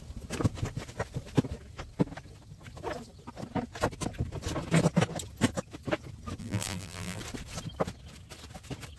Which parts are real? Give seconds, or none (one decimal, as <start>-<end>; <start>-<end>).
0.0-6.4; 7.2-9.0

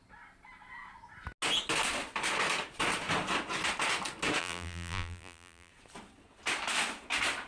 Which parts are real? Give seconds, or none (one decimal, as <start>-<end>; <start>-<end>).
0.0-4.4; 5.7-7.5

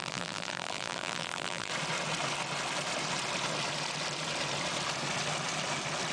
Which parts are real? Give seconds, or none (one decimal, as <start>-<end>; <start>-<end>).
1.7-6.1